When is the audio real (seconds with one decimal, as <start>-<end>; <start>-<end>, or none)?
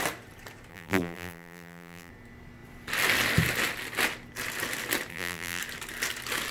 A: 0.0-0.7; 2.1-5.1; 5.6-6.5